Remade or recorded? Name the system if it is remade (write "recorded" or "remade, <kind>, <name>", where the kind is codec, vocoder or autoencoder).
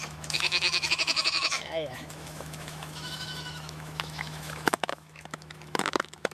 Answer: remade, autoencoder, DAC-VAE